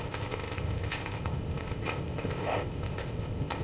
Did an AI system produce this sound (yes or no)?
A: yes